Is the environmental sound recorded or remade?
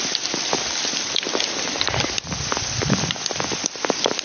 remade